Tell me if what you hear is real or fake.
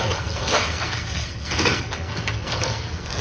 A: fake